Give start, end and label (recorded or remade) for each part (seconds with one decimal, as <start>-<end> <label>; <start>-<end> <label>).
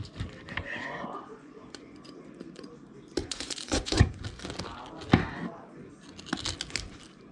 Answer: 0.0-0.6 recorded; 0.6-2.7 remade; 2.7-3.2 recorded; 3.2-4.1 remade; 4.1-7.3 recorded